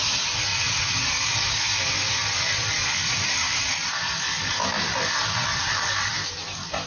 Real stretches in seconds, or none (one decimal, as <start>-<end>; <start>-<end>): 0.0-6.9

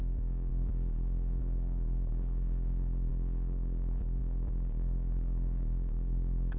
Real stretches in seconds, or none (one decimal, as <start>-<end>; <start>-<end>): none

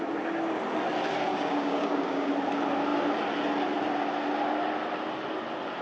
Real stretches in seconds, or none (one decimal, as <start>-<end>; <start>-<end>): 0.0-1.3; 2.3-5.8

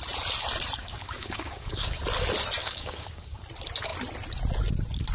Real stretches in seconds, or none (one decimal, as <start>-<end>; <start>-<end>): 0.0-0.8; 2.0-2.6; 3.4-5.1

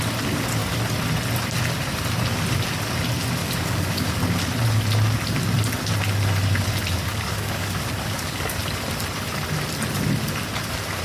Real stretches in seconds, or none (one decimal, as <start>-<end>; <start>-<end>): 0.0-3.4; 4.1-7.1; 8.6-11.0